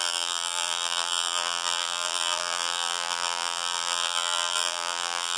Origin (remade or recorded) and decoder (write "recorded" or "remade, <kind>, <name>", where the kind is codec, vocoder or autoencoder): remade, vocoder, BigVGAN v2